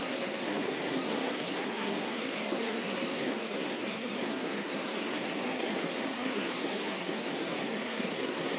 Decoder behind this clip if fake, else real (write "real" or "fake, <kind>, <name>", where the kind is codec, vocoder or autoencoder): fake, codec, SNAC